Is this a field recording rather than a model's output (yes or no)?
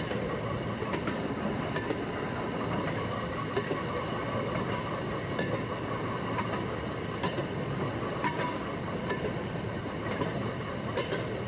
yes